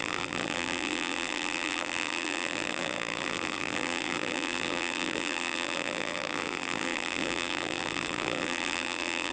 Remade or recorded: remade